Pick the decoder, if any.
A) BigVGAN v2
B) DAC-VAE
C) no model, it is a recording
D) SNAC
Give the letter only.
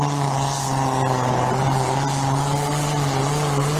C